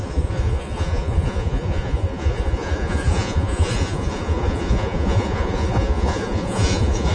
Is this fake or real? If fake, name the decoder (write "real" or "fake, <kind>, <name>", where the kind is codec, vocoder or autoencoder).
fake, vocoder, Vocos